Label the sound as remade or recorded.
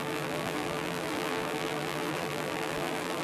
remade